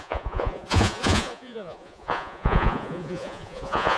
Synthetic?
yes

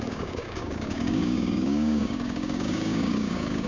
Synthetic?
yes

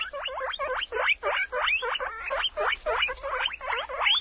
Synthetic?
no